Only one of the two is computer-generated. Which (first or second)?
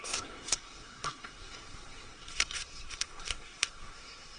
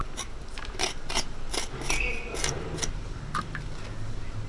first